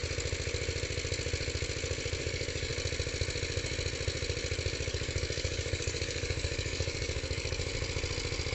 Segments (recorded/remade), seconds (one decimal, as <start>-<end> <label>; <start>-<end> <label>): 0.0-2.2 recorded; 2.2-2.7 remade; 2.7-4.9 recorded; 4.9-7.7 remade; 7.7-8.5 recorded